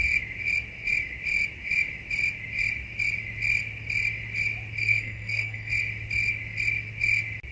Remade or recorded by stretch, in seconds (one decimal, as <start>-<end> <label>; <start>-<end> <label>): 0.0-4.8 recorded; 4.8-5.7 remade; 5.7-7.5 recorded